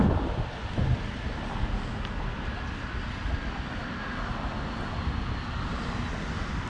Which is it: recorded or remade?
recorded